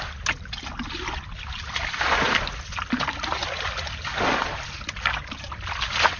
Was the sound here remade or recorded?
recorded